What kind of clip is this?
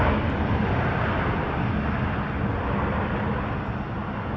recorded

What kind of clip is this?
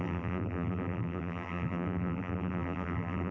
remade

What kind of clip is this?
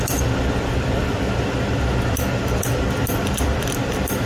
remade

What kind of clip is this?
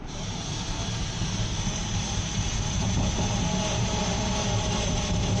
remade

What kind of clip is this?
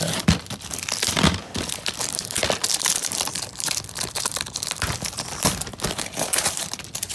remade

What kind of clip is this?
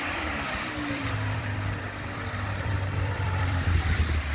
remade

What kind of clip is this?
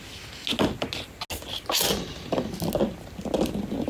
recorded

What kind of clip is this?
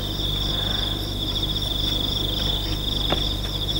recorded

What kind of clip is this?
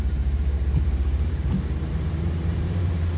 remade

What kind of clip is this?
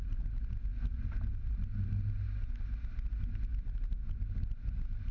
recorded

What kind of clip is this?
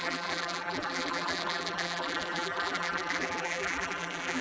remade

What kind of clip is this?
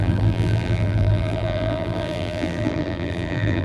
remade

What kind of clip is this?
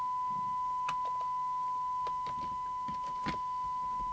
recorded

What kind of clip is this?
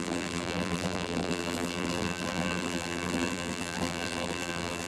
remade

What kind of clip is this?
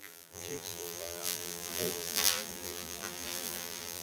remade